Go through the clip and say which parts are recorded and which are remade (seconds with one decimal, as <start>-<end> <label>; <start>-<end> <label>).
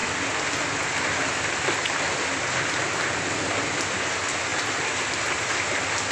0.0-6.1 recorded